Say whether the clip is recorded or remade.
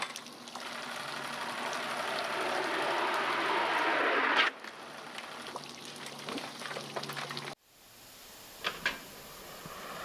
recorded